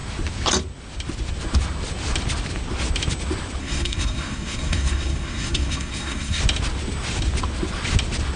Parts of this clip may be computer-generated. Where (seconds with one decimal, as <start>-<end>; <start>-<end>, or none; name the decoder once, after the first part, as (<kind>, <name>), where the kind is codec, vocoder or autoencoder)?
3.6-6.4 (codec, SNAC)